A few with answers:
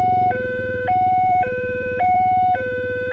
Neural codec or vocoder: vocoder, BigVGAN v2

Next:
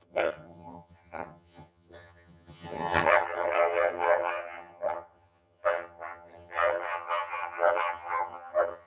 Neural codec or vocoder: vocoder, HiFi-GAN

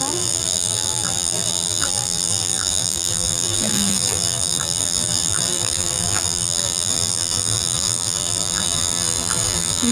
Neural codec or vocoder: vocoder, BigVGAN v2